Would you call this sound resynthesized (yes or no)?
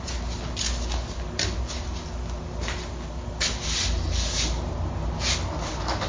no